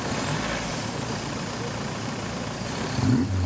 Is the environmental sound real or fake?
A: fake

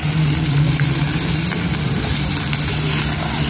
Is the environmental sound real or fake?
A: fake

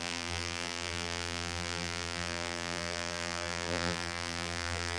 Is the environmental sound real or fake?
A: fake